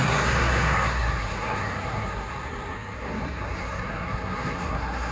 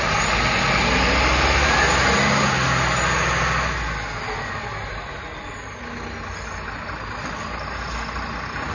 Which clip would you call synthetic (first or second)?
first